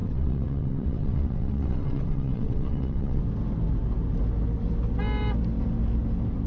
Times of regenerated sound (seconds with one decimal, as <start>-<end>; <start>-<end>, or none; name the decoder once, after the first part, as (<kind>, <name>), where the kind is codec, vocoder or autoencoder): 0.0-3.2 (vocoder, WaveNeXt)